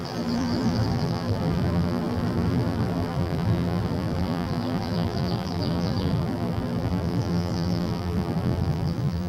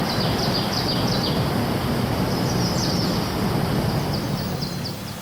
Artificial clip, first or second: first